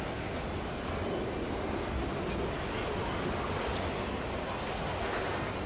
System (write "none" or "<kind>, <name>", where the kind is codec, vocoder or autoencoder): none